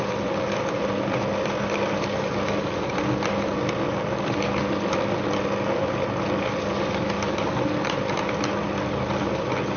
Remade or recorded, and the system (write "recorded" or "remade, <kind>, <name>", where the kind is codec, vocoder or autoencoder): recorded